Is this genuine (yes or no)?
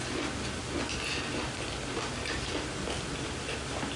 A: yes